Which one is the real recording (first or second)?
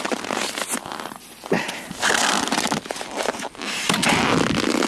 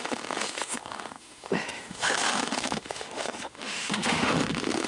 first